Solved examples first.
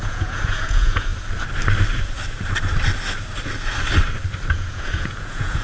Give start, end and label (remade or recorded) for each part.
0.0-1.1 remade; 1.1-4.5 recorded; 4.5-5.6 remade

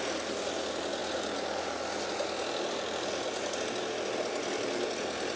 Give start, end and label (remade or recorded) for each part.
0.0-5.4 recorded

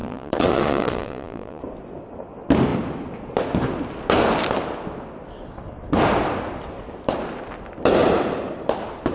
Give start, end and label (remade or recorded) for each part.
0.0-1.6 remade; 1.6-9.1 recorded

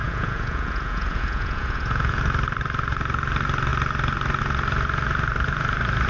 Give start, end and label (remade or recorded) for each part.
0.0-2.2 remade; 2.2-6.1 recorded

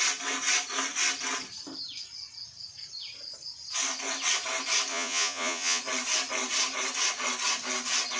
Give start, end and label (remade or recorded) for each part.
0.0-4.9 recorded; 4.9-5.8 remade; 5.8-8.2 recorded